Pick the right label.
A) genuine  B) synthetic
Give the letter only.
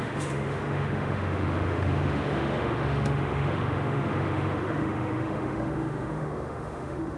B